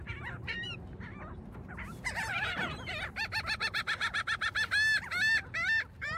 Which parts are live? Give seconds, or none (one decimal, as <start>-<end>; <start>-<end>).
none

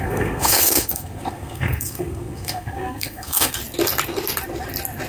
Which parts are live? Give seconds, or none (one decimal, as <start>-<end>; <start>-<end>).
3.6-5.1

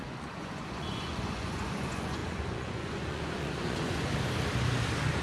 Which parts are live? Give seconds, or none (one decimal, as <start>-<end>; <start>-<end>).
4.1-5.2

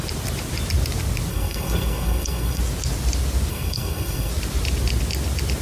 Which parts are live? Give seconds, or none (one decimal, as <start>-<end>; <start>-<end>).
0.0-1.3; 2.6-3.5; 4.3-5.6